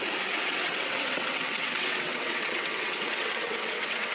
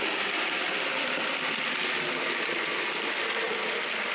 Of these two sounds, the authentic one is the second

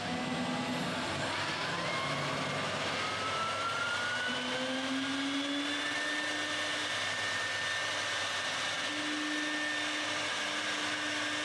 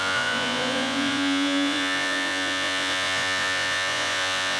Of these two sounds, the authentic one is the first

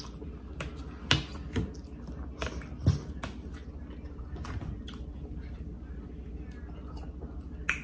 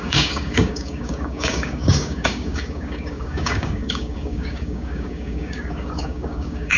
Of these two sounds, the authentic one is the first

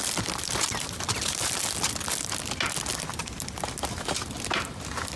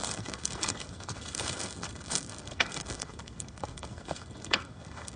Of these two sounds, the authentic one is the first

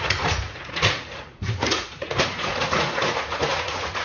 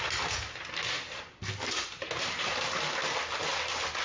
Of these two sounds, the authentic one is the second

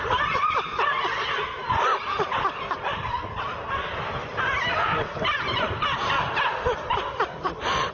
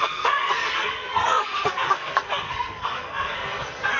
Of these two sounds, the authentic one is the first